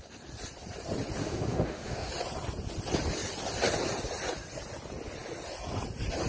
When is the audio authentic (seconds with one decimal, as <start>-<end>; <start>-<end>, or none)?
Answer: 0.0-1.2; 2.1-6.3